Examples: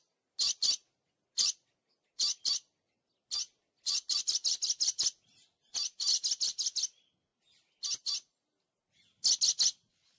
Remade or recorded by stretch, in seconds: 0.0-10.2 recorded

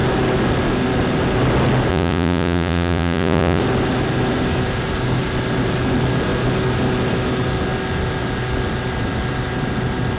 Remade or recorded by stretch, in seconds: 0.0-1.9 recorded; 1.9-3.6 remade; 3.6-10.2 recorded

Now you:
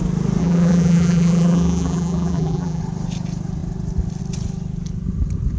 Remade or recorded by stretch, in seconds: 0.0-0.4 recorded; 0.4-2.8 remade; 2.8-5.6 recorded